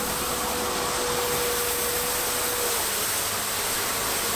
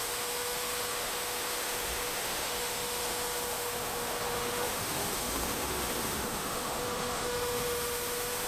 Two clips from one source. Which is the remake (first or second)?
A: second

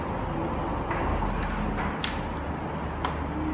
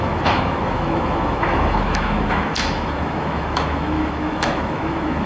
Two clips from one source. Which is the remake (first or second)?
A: second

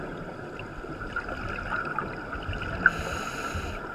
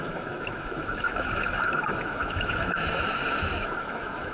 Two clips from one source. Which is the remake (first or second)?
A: second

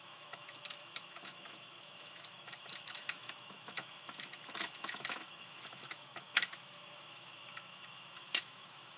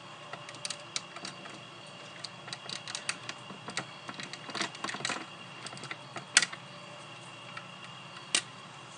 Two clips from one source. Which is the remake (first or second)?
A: first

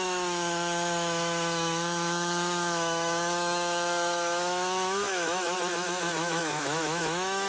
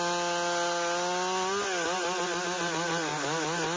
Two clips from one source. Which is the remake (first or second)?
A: first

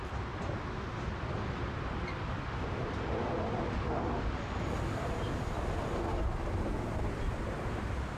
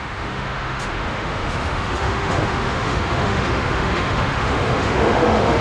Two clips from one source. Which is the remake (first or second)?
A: second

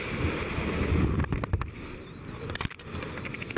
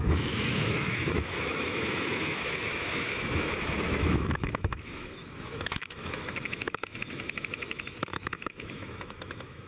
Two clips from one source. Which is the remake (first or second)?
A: second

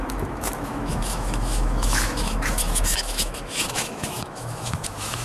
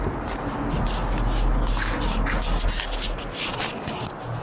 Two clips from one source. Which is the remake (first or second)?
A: first